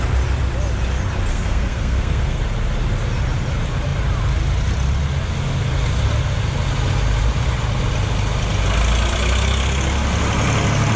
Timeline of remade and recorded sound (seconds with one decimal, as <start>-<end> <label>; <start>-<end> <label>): 0.0-1.3 recorded; 1.3-2.4 remade; 2.4-11.0 recorded